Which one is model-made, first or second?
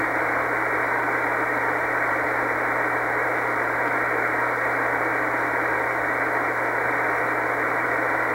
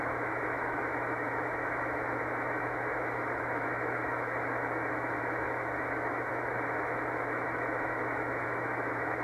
second